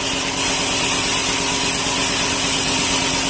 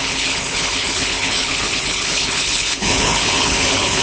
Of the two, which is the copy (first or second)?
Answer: second